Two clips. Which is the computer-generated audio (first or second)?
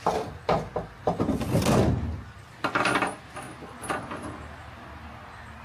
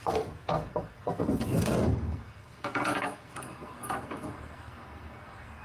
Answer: second